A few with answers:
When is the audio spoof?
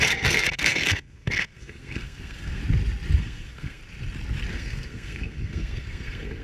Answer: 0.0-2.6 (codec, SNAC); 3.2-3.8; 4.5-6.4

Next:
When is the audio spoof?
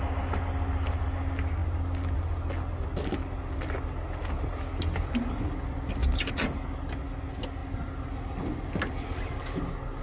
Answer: none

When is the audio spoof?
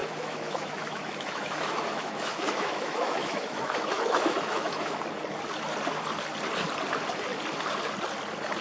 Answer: 0.0-5.0 (autoencoder, DAC-VAE)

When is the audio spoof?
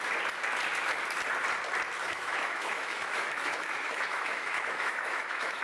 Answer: 2.0-5.6 (autoencoder, DAC-VAE)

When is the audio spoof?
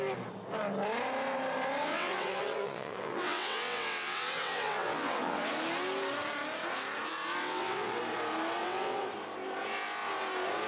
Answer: 1.8-5.5 (vocoder, WaveNeXt); 7.4-8.0; 8.6-9.1